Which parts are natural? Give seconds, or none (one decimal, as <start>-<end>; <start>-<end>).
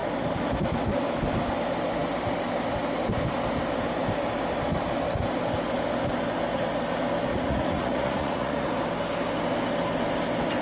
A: 0.0-7.3; 8.7-10.6